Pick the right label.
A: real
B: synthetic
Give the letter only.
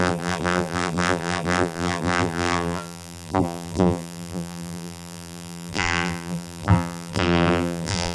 B